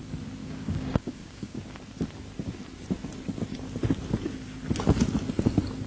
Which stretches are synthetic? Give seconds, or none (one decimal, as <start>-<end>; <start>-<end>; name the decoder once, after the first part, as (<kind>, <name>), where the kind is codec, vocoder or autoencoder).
0.4-1.6 (codec, DAC)

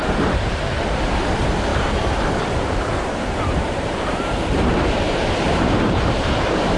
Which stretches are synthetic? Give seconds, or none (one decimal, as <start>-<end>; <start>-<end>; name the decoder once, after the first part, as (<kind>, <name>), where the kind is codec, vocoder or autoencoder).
0.0-6.8 (vocoder, BigVGAN v2)

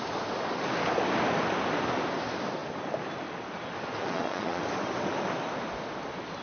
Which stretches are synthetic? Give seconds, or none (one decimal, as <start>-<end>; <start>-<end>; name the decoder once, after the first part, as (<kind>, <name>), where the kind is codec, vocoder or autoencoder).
4.0-4.6 (vocoder, Vocos)